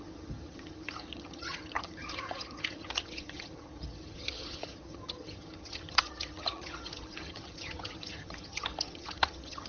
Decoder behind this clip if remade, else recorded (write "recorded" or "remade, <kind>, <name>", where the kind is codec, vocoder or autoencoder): remade, vocoder, HiFi-GAN